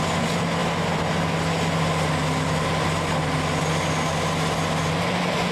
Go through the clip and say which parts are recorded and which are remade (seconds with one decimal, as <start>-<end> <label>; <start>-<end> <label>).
0.0-5.5 recorded